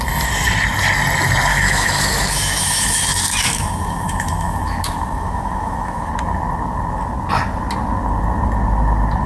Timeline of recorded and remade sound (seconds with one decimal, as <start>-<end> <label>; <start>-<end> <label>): 0.0-1.5 recorded; 1.5-6.1 remade; 6.1-9.3 recorded